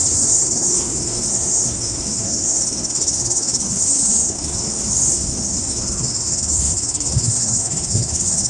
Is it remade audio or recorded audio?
remade